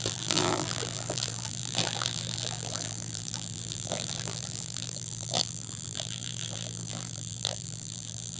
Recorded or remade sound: remade